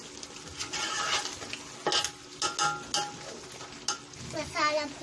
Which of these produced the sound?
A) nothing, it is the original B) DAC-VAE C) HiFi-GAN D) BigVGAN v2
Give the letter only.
A